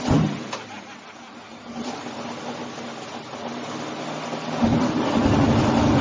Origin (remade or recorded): recorded